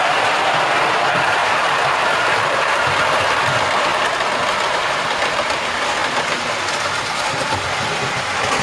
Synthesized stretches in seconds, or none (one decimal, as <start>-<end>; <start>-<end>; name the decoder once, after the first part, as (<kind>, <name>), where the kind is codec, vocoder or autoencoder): 1.4-3.0 (vocoder, BigVGAN v2)